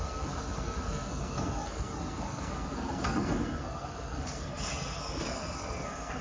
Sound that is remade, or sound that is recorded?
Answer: remade